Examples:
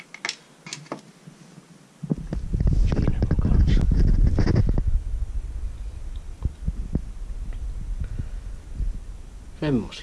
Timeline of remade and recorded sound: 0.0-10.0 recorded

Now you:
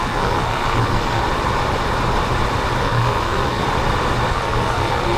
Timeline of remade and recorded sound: 0.0-1.2 remade; 1.2-2.8 recorded; 2.8-3.6 remade; 3.6-4.3 recorded; 4.3-5.2 remade

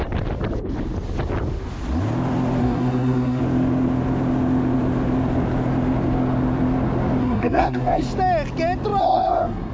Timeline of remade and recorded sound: 0.0-2.6 recorded; 2.6-3.4 remade; 3.4-7.2 recorded; 7.2-8.0 remade; 8.0-9.0 recorded; 9.0-9.7 remade

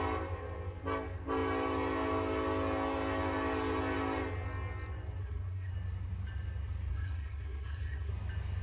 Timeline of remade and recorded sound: 0.0-5.2 recorded; 5.2-5.7 remade; 5.7-6.9 recorded; 6.9-8.1 remade; 8.1-8.6 recorded

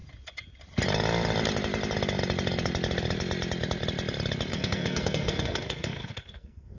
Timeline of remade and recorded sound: 0.0-4.5 recorded; 4.5-6.8 remade